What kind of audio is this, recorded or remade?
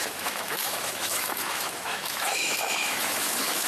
remade